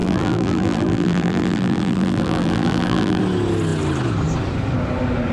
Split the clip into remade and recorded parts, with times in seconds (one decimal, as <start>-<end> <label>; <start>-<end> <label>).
0.0-3.2 remade; 3.2-5.3 recorded